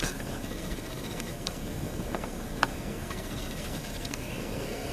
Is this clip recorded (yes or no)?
no